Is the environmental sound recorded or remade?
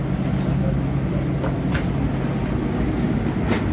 recorded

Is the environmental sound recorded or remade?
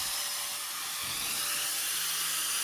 recorded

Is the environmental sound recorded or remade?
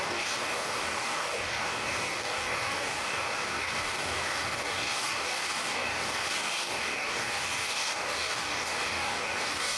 remade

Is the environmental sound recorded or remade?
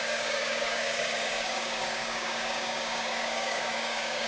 remade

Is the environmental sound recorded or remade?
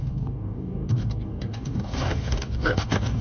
remade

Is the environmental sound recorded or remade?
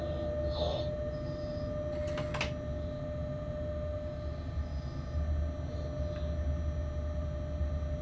recorded